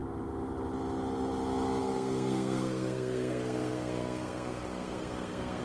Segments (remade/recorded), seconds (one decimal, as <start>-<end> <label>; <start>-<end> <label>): 0.0-1.8 recorded; 1.8-5.6 remade